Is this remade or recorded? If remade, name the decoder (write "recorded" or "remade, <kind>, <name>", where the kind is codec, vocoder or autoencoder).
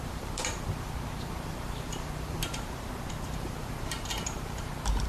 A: remade, vocoder, BigVGAN v2